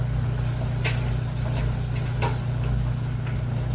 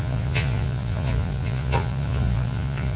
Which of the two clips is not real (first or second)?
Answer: second